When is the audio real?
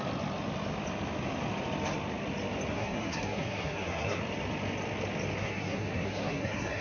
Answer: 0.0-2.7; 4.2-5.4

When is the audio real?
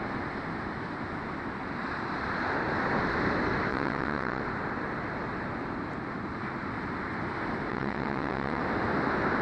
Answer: 0.0-3.7; 4.4-7.7; 8.6-9.4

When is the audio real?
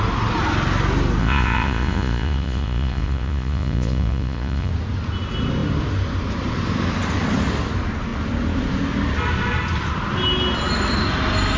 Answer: 0.0-1.2; 4.7-11.6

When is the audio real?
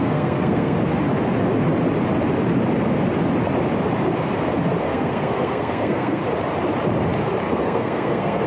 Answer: 0.8-4.8; 6.2-7.5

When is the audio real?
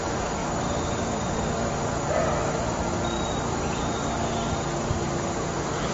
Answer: 0.0-0.4; 1.7-5.9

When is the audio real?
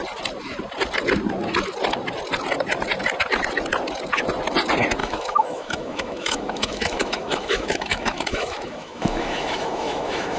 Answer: 0.0-5.0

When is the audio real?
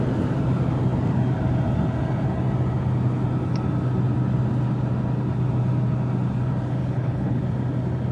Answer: 0.0-6.8; 7.4-8.1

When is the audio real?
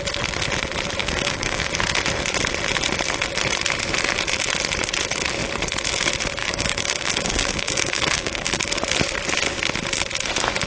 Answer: 0.0-1.0; 1.7-6.4; 8.7-10.7